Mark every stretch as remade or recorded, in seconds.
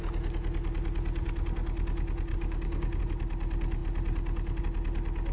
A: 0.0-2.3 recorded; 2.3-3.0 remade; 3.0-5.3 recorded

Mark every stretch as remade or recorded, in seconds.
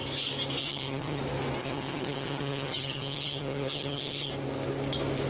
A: 0.0-0.6 recorded; 0.6-1.2 remade; 1.2-1.6 recorded; 1.6-4.3 remade; 4.3-5.3 recorded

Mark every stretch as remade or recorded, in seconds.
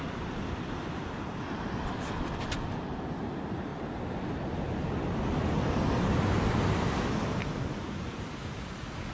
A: 0.0-9.1 recorded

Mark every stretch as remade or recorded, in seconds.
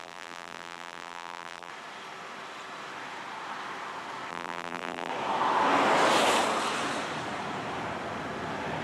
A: 0.0-1.7 remade; 1.7-4.3 recorded; 4.3-5.1 remade; 5.1-8.8 recorded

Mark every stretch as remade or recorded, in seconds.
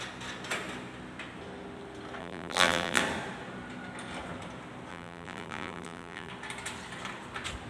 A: 0.0-2.2 recorded; 2.2-3.0 remade; 3.0-4.9 recorded; 4.9-6.3 remade; 6.3-7.7 recorded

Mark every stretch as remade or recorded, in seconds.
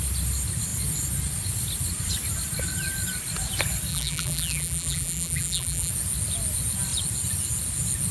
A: 0.0-3.9 recorded; 3.9-5.9 remade; 5.9-8.1 recorded